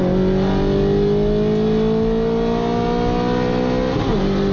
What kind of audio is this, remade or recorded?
recorded